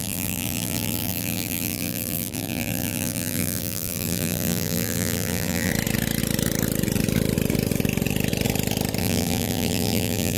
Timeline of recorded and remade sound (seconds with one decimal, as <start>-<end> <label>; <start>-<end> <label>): 0.0-5.7 remade; 5.7-9.0 recorded; 9.0-10.4 remade